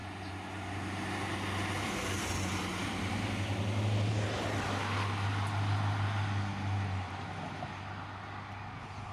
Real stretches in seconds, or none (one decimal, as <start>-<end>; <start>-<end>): 0.0-9.1